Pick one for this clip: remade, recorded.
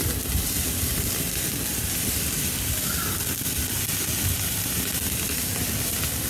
recorded